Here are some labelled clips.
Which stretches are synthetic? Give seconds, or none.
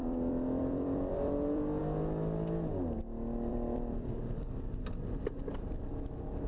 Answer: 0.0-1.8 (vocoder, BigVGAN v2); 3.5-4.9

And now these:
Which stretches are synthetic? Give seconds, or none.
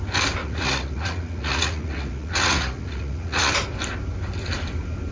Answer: 0.4-3.5 (vocoder, Vocos)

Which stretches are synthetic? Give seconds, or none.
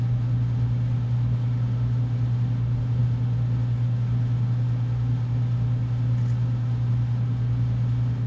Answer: none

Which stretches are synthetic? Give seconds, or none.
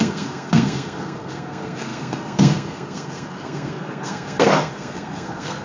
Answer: 0.0-5.6 (codec, SNAC)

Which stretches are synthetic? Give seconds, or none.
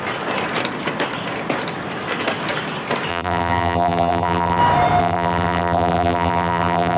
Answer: 3.1-4.6 (vocoder, BigVGAN v2); 5.0-7.0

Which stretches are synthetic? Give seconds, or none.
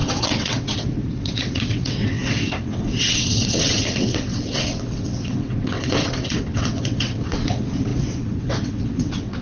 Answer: 0.0-9.4 (vocoder, WaveNeXt)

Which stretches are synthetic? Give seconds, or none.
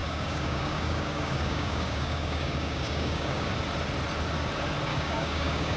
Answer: 0.0-3.5 (codec, DAC); 4.9-5.8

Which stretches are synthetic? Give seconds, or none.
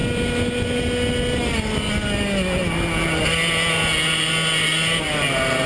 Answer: none